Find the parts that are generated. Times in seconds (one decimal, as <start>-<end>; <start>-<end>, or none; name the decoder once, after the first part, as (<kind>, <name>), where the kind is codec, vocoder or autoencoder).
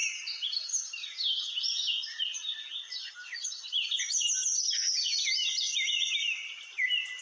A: 0.0-4.5 (vocoder, BigVGAN v2); 5.6-6.4